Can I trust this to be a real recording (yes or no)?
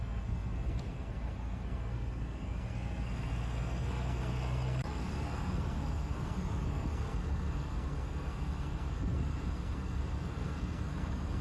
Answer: no